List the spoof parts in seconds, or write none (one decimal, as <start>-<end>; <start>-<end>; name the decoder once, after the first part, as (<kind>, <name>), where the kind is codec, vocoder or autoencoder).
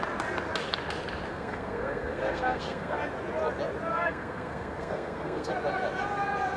1.3-3.0 (codec, SNAC); 3.9-5.5